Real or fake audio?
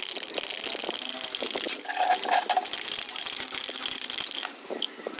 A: real